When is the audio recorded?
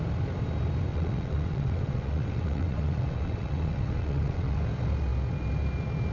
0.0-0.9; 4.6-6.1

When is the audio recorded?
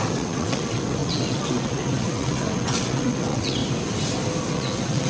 3.6-4.5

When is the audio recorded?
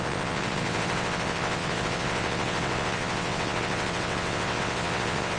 none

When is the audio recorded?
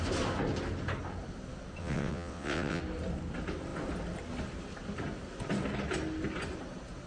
0.0-1.8; 2.8-7.1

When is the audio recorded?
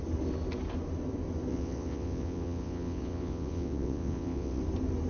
0.0-1.5; 4.6-5.1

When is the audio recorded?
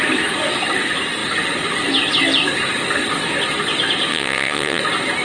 0.0-4.1; 4.8-5.2